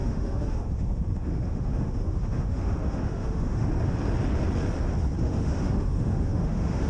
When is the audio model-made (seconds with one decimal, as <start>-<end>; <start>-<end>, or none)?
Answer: 0.0-3.7; 5.2-6.9